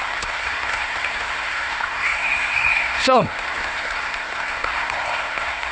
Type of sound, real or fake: fake